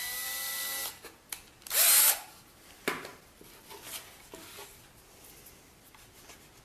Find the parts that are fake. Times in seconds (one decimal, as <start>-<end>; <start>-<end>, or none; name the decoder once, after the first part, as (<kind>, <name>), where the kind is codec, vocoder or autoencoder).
none